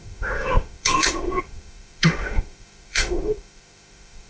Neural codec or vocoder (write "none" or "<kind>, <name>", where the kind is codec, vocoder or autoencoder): autoencoder, DAC-VAE